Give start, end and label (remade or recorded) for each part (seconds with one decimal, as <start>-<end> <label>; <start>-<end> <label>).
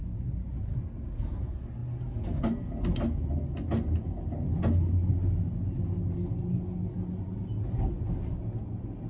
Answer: 0.0-9.1 recorded